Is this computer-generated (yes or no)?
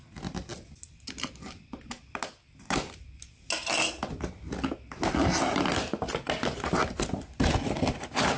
no